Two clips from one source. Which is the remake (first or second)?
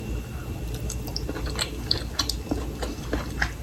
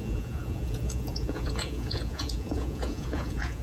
second